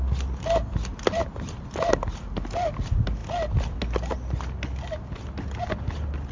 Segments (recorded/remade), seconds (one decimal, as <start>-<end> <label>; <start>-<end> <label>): 0.0-6.3 recorded